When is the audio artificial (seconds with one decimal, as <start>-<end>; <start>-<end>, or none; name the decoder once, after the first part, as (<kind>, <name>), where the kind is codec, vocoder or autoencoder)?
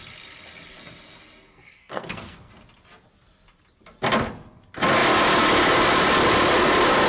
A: 1.5-2.5 (codec, SNAC)